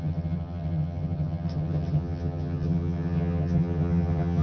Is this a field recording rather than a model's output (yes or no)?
no